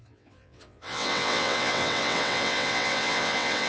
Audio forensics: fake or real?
fake